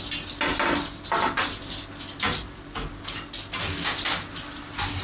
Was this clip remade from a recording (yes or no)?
no